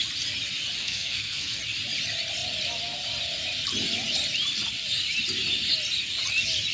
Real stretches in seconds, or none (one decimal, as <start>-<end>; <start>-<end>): 0.0-0.8; 1.6-6.7

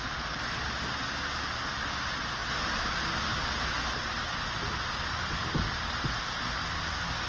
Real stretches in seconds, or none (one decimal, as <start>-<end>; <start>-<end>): 0.0-7.3

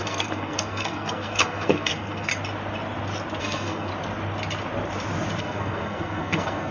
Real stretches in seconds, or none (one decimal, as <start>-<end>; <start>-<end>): 2.3-3.4; 3.9-5.4

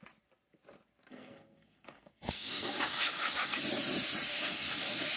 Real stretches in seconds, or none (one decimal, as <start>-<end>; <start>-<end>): 0.0-1.1; 3.6-4.3

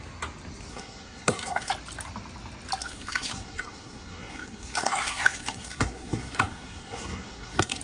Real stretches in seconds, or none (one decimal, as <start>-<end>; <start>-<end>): 0.0-0.7; 1.7-2.8